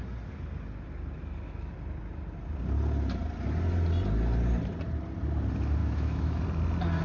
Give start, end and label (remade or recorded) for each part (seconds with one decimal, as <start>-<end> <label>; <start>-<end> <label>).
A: 0.0-5.8 recorded; 5.8-6.4 remade; 6.4-7.0 recorded